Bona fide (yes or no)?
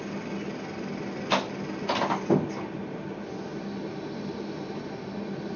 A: yes